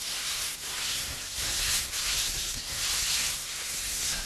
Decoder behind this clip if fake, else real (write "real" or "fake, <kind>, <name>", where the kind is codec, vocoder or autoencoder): fake, codec, SNAC